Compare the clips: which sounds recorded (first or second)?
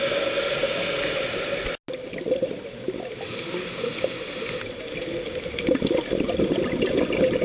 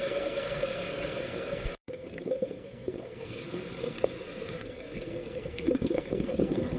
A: first